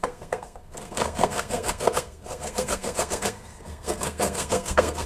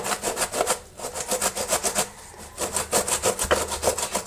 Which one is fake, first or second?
first